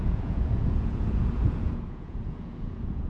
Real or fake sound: fake